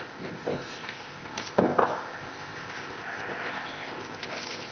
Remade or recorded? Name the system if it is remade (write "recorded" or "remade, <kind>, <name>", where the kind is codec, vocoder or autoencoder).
remade, codec, ZipCodec